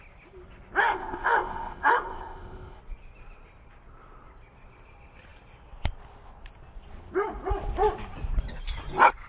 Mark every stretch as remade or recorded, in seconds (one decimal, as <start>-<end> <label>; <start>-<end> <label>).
0.0-0.8 recorded; 0.8-2.8 remade; 2.8-9.3 recorded